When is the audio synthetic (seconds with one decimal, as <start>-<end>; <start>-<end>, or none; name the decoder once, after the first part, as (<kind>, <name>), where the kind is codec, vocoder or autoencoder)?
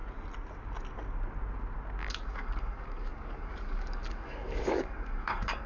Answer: 2.0-5.7 (codec, DAC)